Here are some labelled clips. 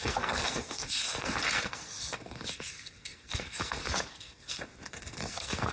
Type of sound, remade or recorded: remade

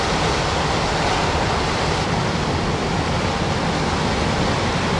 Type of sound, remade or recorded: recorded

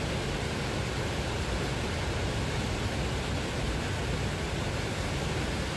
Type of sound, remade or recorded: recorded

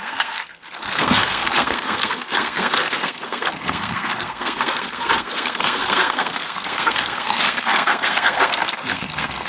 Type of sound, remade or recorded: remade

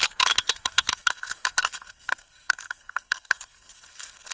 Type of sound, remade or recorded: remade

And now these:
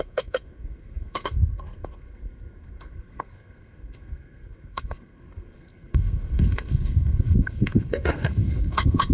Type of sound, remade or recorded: remade